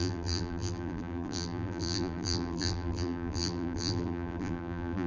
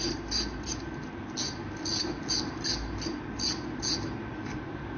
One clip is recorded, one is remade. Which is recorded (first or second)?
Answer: second